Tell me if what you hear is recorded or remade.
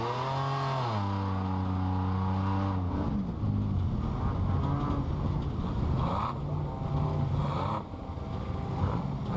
recorded